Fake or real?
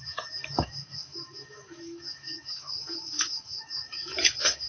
fake